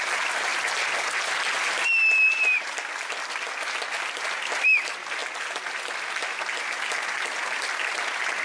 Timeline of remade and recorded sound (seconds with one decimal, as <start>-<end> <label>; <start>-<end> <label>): 0.0-8.4 recorded